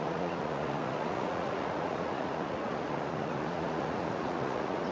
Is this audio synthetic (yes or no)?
yes